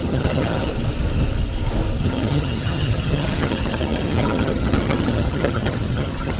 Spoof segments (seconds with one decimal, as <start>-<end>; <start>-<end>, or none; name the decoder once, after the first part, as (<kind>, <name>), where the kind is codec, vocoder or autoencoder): 0.0-0.7 (vocoder, HiFi-GAN); 2.0-6.4

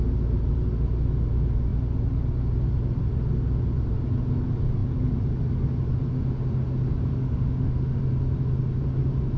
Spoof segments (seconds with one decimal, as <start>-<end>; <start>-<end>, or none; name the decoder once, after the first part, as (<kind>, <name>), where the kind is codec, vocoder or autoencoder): 7.1-8.0 (autoencoder, DAC-VAE)

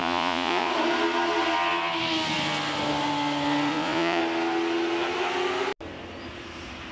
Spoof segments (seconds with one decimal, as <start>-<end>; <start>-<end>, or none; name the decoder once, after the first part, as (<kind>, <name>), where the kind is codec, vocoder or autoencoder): 0.0-0.7 (vocoder, Vocos); 3.7-4.2

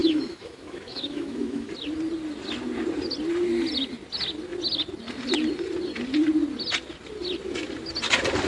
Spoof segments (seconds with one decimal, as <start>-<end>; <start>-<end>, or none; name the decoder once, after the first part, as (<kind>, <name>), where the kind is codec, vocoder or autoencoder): 0.0-1.7 (autoencoder, DAC-VAE)

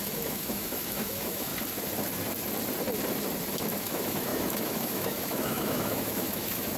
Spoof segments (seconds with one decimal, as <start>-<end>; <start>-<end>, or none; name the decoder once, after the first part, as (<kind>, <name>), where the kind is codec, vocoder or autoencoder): 0.0-1.5 (autoencoder, DAC-VAE); 3.6-6.8

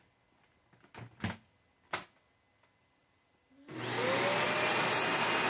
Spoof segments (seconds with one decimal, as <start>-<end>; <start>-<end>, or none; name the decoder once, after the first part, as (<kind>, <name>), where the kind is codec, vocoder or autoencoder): none

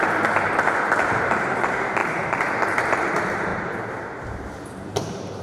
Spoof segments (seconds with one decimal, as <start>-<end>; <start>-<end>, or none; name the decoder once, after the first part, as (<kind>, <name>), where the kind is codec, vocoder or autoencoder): 0.0-5.4 (vocoder, BigVGAN v2)

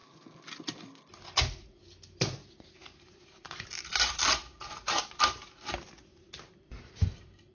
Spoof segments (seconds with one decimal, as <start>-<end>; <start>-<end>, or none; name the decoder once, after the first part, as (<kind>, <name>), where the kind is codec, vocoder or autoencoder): 2.4-5.0 (vocoder, BigVGAN v2); 6.1-7.5